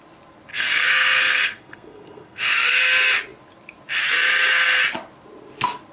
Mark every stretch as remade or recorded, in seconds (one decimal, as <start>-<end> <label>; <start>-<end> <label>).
0.0-0.5 recorded; 0.5-2.8 remade; 2.8-5.9 recorded